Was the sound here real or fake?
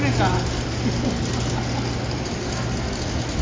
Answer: real